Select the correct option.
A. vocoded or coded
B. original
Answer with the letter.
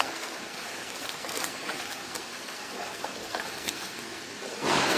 A